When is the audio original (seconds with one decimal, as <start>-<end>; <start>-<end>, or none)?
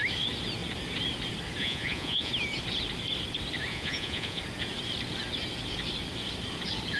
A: 0.0-1.6; 2.3-3.7; 4.4-7.0